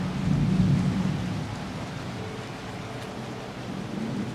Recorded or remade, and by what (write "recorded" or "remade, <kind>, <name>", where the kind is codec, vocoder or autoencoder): recorded